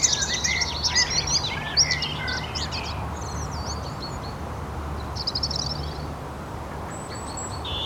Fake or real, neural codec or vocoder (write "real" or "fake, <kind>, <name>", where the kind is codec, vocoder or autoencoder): real